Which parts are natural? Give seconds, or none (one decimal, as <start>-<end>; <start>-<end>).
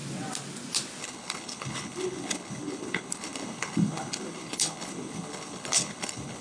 0.0-1.0